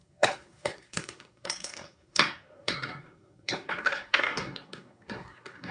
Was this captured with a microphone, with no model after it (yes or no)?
no